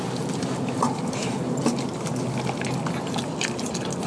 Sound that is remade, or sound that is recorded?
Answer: recorded